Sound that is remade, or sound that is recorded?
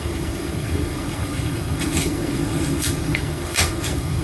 remade